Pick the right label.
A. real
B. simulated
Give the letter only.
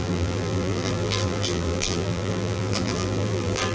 B